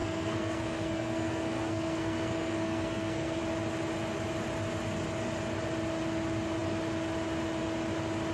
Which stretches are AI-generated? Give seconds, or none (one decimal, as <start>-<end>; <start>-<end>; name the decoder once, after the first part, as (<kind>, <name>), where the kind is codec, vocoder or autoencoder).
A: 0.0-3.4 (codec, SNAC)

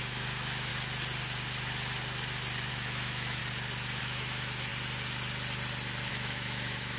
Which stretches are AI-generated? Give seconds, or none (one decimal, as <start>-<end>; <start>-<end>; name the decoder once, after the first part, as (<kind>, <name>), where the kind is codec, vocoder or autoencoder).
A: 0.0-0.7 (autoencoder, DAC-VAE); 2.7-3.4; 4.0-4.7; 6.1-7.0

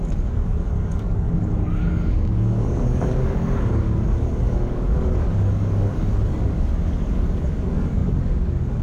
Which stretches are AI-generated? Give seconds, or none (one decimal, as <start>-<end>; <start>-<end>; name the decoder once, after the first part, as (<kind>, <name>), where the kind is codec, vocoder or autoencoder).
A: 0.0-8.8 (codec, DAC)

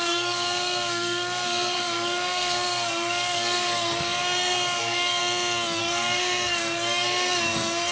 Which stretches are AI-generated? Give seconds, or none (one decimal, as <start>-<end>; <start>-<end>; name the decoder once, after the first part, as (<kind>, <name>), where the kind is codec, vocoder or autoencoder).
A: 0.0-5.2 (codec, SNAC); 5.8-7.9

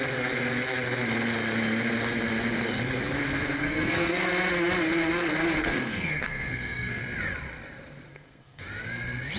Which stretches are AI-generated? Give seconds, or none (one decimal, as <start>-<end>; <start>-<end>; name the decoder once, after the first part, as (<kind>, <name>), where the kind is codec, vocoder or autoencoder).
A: 3.6-4.3 (codec, SNAC); 5.6-7.0; 8.1-8.6

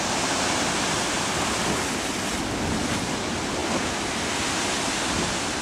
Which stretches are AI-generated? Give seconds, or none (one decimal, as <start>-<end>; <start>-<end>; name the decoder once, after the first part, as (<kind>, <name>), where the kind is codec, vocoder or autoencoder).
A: none

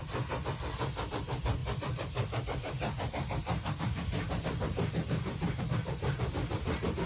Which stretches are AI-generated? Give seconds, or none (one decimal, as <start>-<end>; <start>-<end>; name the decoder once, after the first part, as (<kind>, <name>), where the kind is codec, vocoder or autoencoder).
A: 1.1-7.1 (vocoder, BigVGAN v2)

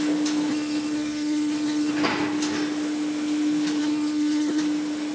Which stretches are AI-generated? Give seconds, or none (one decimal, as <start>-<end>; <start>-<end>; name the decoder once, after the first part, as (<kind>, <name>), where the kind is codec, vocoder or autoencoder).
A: 0.5-1.9 (codec, SNAC); 3.8-4.6